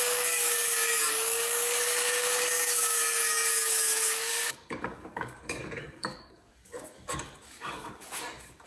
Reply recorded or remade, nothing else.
remade